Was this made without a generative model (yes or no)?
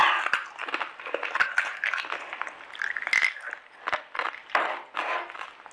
yes